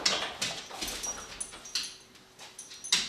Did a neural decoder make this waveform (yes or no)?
no